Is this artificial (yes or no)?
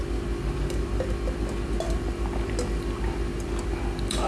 no